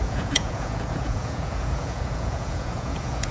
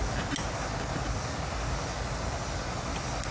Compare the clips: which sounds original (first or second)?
second